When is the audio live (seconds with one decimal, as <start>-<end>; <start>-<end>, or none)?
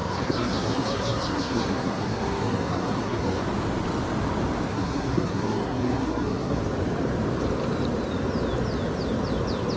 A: 3.4-4.7; 6.6-9.8